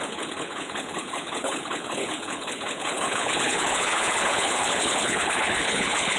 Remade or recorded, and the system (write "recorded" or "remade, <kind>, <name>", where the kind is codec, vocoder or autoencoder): remade, codec, HILCodec